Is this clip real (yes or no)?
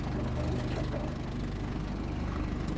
yes